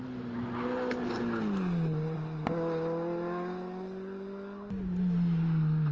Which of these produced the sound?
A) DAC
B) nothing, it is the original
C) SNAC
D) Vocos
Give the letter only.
B